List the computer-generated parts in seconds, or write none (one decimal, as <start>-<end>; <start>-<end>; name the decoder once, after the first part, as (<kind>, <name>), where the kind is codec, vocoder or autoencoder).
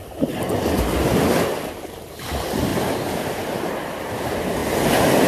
0.0-0.5 (vocoder, BigVGAN v2)